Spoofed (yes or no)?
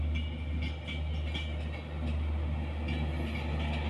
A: no